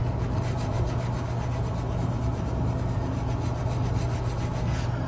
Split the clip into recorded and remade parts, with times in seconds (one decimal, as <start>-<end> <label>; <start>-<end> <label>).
0.0-5.1 recorded